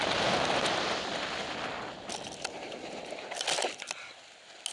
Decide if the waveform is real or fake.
real